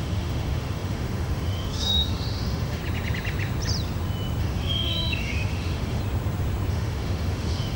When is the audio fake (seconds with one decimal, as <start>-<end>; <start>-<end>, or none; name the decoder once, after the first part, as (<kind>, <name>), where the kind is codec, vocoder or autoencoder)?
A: 0.0-2.8 (autoencoder, DAC-VAE); 4.4-6.0; 6.7-7.8